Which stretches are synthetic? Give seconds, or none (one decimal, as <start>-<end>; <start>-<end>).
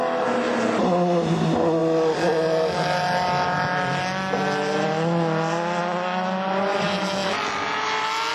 none